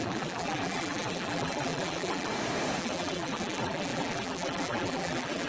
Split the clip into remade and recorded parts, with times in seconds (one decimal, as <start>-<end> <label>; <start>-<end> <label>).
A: 0.0-2.3 remade; 2.3-2.8 recorded; 2.8-5.5 remade